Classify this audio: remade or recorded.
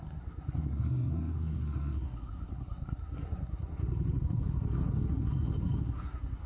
remade